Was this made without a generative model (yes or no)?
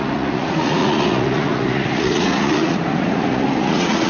no